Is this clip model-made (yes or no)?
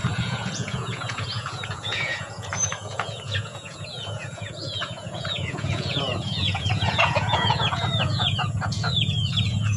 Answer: yes